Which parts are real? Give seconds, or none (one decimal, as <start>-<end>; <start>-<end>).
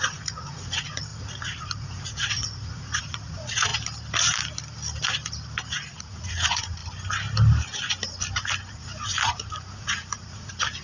3.7-6.0; 6.8-8.7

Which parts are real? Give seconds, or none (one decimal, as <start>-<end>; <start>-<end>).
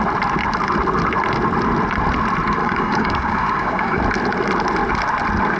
0.0-2.6; 4.0-5.6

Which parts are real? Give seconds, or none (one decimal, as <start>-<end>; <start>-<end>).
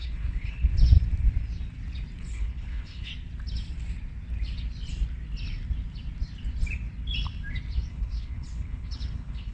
0.7-2.2; 3.1-7.9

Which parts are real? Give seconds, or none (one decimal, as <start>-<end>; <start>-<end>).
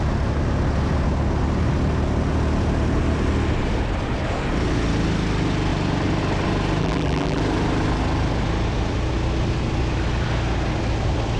0.0-6.8; 7.4-11.4